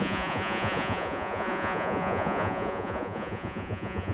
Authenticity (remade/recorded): remade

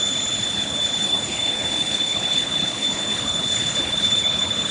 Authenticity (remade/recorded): remade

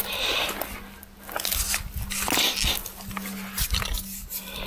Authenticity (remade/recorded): recorded